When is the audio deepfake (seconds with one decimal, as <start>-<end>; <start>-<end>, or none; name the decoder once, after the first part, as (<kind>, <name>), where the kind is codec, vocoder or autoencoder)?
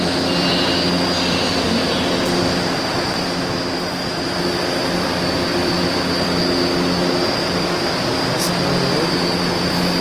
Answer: none